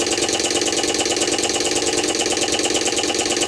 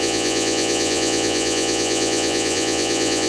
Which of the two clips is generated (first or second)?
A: second